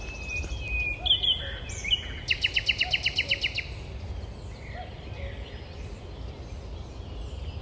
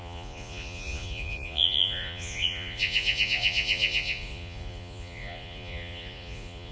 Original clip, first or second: first